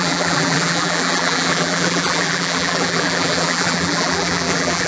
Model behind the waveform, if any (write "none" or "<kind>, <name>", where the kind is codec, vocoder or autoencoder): vocoder, BigVGAN v2